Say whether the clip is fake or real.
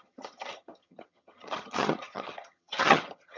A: fake